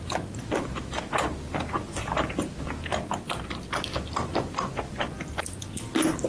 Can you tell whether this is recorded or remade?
recorded